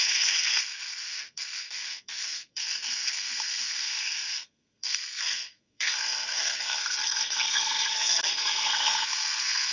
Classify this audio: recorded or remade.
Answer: remade